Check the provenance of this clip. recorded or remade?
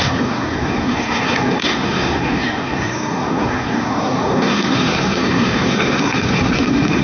remade